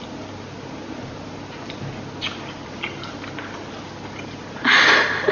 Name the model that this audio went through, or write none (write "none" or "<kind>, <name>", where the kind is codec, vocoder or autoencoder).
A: none